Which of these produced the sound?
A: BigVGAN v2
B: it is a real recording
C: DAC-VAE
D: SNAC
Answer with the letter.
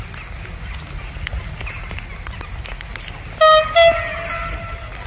B